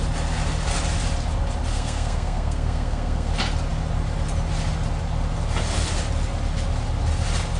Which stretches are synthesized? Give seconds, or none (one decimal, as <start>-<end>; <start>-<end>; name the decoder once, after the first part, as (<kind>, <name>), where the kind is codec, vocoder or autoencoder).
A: 1.7-3.3 (codec, SNAC)